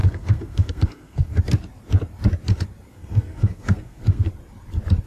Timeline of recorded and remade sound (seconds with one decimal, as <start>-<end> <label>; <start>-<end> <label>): 0.0-1.4 remade; 1.4-2.9 recorded; 2.9-4.3 remade; 4.3-5.1 recorded